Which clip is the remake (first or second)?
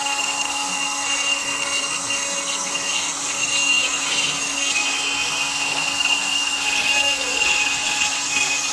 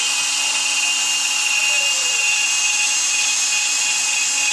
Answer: first